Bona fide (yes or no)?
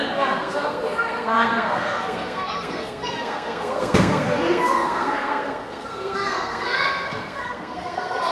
no